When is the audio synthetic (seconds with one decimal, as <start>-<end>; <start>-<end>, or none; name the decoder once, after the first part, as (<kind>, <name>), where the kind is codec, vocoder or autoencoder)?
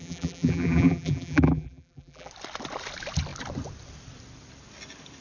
0.0-2.3 (vocoder, BigVGAN v2)